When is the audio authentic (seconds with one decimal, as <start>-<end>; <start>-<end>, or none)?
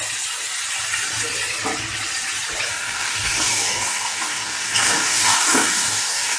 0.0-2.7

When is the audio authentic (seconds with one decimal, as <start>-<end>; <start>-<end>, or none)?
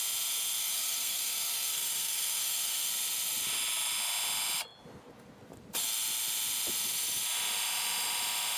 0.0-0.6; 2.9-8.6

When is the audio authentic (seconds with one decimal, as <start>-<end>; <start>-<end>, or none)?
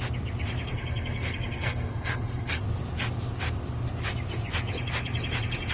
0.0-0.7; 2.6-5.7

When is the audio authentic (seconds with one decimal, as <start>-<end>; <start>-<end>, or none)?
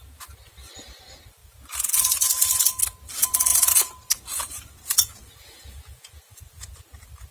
0.0-3.5; 6.8-7.3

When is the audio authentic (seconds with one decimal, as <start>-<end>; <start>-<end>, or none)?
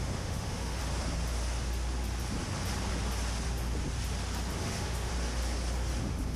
0.8-4.6; 5.1-6.0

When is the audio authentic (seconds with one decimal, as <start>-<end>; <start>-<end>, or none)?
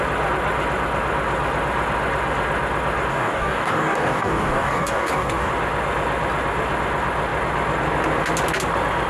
0.0-3.1; 5.5-9.1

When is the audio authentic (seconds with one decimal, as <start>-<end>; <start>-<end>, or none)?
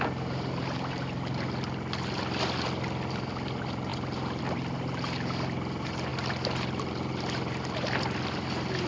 0.0-8.9